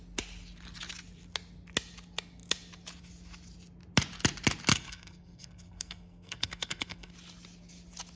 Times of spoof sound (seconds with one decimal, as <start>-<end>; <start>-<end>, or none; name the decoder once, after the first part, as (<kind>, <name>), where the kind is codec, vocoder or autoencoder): 4.7-7.1 (codec, SNAC)

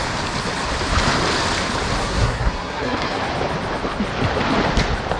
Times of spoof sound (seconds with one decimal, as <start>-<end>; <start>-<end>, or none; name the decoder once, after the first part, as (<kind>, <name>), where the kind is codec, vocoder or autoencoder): 2.0-3.2 (codec, SNAC)

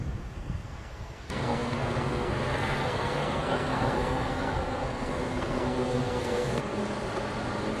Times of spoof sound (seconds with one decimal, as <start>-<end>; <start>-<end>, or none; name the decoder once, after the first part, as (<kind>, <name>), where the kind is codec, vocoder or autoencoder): 0.0-6.8 (codec, SNAC)

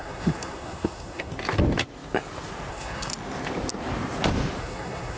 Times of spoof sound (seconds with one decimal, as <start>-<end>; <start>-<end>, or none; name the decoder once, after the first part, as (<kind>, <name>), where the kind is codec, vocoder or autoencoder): 0.0-1.3 (codec, SNAC); 2.7-3.1; 4.6-5.2